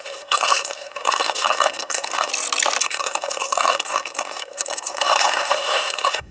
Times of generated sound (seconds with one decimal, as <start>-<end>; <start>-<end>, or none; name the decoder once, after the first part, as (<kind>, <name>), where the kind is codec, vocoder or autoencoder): 0.0-2.3 (codec, SNAC); 2.8-6.3